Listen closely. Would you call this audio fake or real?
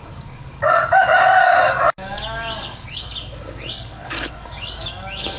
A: fake